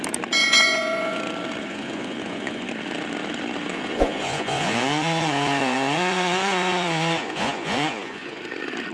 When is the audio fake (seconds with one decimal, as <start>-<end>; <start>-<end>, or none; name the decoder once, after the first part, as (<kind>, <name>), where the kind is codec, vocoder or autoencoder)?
0.4-1.2 (vocoder, Vocos); 1.7-2.7; 3.7-8.4